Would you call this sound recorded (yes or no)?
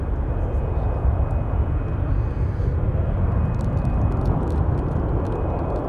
yes